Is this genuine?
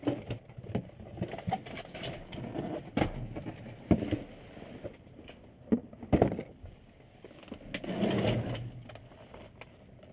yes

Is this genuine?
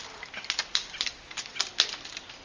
yes